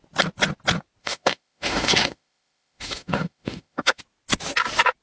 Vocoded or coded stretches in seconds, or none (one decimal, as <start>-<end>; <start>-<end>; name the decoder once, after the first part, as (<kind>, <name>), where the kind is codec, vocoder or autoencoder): 1.0-4.0 (autoencoder, DAC-VAE)